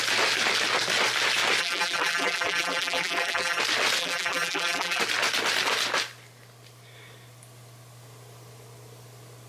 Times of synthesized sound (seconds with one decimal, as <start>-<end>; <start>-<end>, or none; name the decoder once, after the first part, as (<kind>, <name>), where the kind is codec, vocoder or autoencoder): 1.6-3.6 (vocoder, BigVGAN v2); 4.0-5.0